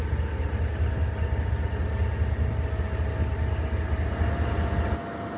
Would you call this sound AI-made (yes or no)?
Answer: no